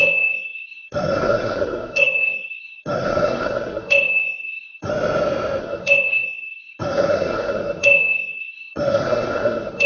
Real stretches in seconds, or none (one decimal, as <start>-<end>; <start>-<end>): 4.9-5.6